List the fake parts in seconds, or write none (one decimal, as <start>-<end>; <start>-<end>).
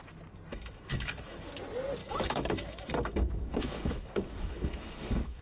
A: 0.5-1.5; 2.0-5.4